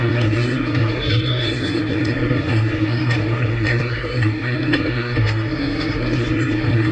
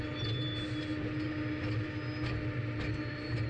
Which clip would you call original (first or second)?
second